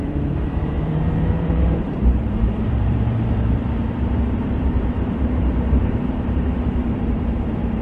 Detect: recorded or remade remade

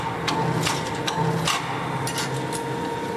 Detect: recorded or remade recorded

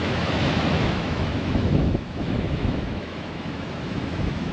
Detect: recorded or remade remade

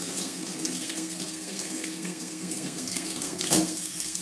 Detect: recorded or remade remade